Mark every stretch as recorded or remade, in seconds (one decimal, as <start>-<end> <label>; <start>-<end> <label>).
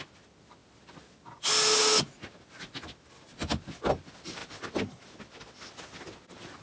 0.0-6.6 recorded